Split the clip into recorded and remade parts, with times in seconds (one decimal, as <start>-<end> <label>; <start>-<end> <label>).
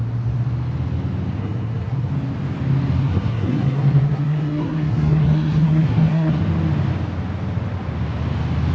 0.0-1.4 recorded; 1.4-2.1 remade; 2.1-3.0 recorded; 3.0-6.4 remade; 6.4-8.7 recorded